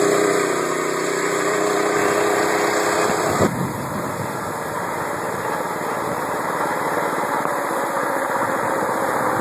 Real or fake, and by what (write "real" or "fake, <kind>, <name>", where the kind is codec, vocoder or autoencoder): fake, vocoder, BigVGAN v2